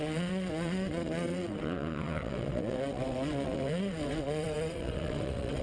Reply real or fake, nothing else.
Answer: fake